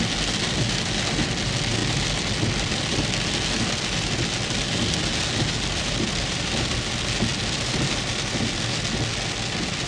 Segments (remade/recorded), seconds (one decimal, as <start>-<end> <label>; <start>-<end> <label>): 0.0-9.9 recorded